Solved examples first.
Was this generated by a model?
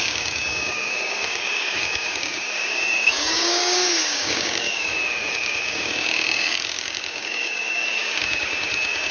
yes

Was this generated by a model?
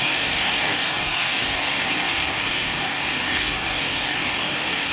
yes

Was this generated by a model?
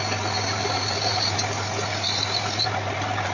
no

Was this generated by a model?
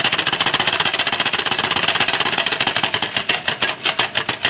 no